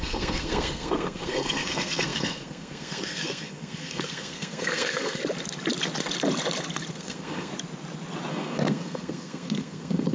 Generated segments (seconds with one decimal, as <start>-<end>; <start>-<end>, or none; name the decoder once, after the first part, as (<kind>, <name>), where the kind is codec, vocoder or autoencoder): 0.0-5.2 (codec, SNAC); 6.9-7.5; 8.3-10.1